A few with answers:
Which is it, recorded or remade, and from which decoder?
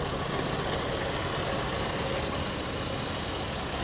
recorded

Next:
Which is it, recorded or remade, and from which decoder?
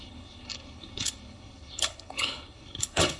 remade, codec, HILCodec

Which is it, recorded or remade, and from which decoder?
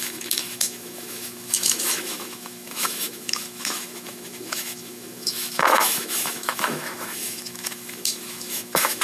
remade, autoencoder, DAC-VAE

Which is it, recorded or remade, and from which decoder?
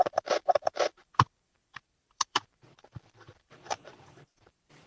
remade, vocoder, BigVGAN v2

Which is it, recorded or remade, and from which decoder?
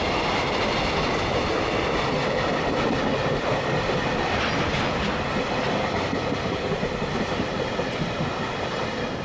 recorded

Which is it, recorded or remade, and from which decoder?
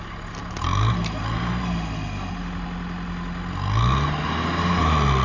recorded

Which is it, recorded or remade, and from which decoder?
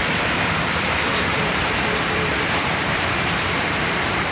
remade, vocoder, BigVGAN v2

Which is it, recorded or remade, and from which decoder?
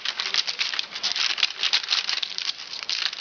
recorded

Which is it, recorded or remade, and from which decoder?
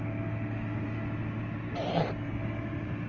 recorded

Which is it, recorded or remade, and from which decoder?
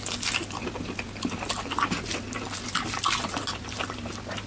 recorded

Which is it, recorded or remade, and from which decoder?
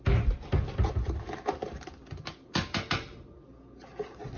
recorded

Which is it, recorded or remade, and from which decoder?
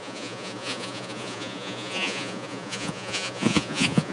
remade, vocoder, Vocos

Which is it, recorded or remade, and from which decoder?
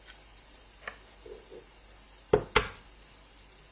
recorded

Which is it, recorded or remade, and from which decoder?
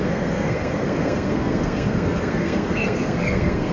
remade, codec, SNAC